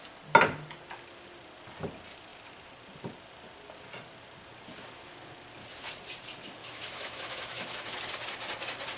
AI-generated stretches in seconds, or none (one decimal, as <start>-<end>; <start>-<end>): 6.6-8.0